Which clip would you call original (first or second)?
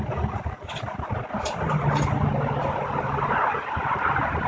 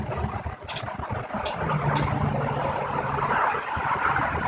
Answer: second